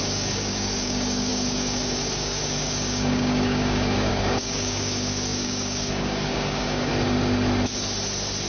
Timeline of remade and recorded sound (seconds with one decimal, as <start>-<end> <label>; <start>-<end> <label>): 0.0-6.9 remade; 6.9-8.5 recorded